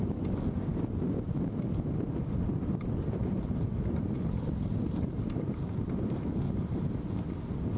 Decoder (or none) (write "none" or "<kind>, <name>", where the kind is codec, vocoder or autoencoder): none